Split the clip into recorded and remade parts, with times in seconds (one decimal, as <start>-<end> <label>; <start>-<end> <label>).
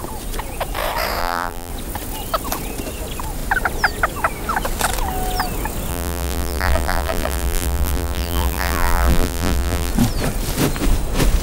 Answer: 0.0-1.2 recorded; 1.2-1.7 remade; 1.7-5.9 recorded; 5.9-9.9 remade; 9.9-11.4 recorded